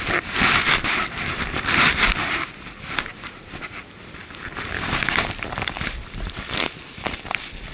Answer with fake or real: fake